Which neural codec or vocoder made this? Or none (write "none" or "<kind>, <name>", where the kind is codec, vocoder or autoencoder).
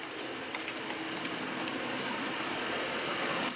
none